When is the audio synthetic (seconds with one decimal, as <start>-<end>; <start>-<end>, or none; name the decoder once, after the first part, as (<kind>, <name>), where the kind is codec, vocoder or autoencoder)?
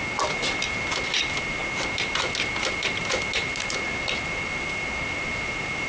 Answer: none